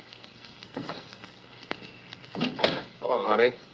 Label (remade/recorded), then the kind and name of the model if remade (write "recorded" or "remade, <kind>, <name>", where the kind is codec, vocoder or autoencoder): remade, codec, SNAC